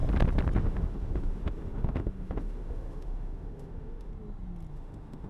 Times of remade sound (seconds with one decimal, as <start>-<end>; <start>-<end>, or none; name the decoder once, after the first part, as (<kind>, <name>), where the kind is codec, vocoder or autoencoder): 0.6-4.1 (autoencoder, DAC-VAE); 4.7-5.3